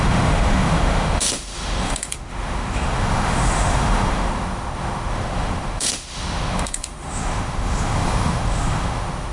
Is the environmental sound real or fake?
fake